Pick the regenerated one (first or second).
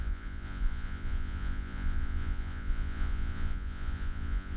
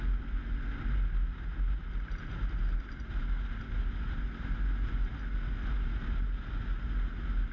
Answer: first